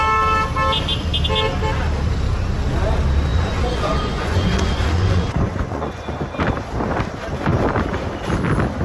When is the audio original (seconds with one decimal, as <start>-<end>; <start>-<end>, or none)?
0.0-3.3; 6.2-8.8